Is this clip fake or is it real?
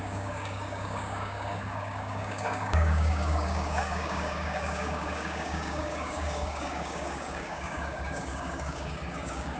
fake